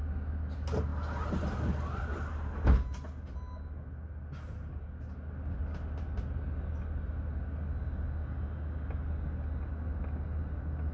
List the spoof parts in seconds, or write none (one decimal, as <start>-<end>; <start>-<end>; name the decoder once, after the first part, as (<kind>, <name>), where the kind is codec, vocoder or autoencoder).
none

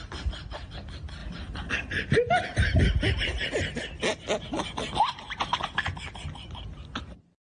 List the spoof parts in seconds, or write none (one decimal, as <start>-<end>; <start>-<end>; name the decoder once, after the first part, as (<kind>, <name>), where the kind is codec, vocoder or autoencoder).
none

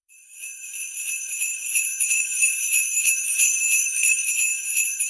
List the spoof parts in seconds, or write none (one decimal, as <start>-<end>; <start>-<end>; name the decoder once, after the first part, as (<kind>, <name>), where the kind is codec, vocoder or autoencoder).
0.0-5.1 (autoencoder, DAC-VAE)

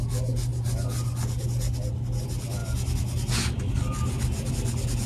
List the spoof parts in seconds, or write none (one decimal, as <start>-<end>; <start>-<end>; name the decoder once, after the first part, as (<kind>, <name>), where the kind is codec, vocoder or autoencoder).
none